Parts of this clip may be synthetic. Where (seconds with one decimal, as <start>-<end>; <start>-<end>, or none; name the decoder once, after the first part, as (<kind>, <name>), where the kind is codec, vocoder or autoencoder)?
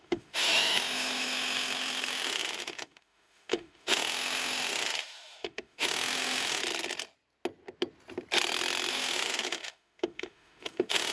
0.0-6.6 (autoencoder, DAC-VAE); 8.9-11.1